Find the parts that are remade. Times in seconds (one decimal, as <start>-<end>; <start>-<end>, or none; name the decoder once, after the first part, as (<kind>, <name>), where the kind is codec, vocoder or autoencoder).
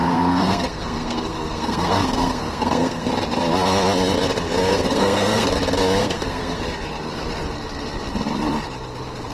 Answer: 0.0-3.1 (codec, SNAC); 4.7-5.5; 6.0-6.6